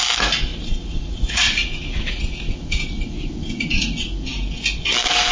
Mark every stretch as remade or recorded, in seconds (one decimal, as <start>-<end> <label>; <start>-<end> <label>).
0.0-0.5 recorded; 0.5-3.7 remade; 3.7-5.3 recorded